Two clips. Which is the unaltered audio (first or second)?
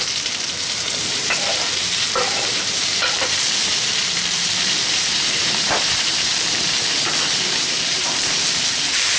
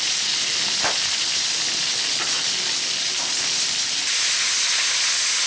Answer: second